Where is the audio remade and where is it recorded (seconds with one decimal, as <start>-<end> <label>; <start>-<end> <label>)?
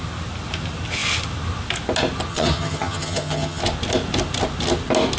0.0-2.3 recorded; 2.3-3.6 remade; 3.6-5.2 recorded